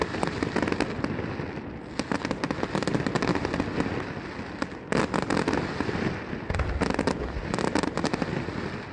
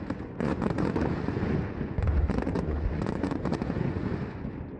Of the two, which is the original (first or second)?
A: first